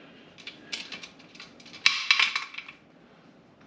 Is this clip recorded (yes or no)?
yes